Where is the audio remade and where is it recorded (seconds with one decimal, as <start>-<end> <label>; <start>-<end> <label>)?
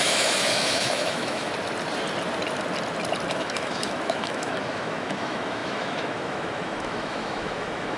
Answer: 0.0-1.5 remade; 1.5-3.3 recorded; 3.3-8.0 remade